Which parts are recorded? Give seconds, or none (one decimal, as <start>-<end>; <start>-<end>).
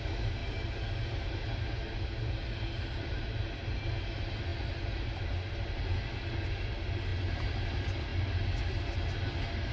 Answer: 0.0-9.7